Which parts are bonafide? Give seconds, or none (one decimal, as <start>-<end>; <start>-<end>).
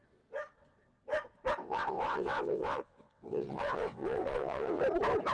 0.0-1.6; 4.8-5.3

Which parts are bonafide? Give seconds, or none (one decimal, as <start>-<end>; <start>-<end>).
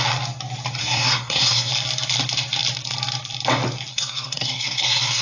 0.0-0.8; 1.7-3.9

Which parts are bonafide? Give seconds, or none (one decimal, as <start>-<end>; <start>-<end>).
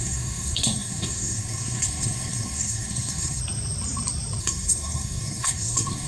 3.4-4.4